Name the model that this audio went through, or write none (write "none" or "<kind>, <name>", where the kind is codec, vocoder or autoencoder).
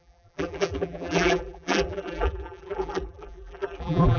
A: vocoder, BigVGAN v2